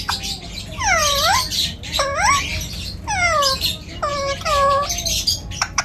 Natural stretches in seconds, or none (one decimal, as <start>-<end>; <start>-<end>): 0.0-5.8